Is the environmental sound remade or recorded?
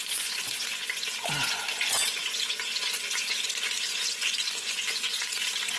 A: remade